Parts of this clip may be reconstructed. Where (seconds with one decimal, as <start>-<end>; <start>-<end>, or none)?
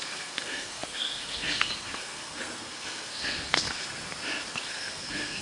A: 0.0-3.9; 4.5-5.4